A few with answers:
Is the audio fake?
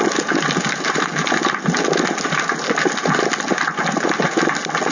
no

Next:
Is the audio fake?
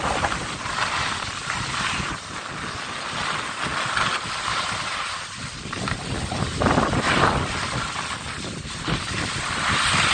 no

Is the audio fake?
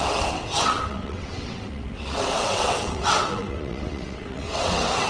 yes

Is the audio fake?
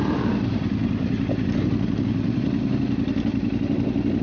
no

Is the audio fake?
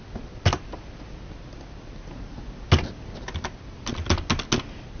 no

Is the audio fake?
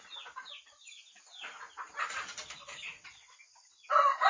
no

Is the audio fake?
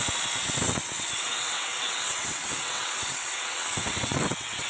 yes